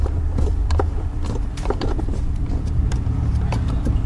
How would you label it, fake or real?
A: fake